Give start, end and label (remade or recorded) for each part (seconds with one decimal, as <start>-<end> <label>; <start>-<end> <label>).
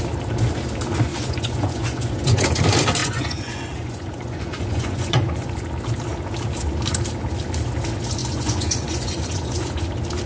0.0-1.1 recorded; 1.1-2.6 remade; 2.6-3.0 recorded; 3.0-5.6 remade; 5.6-8.2 recorded; 8.2-9.8 remade; 9.8-10.3 recorded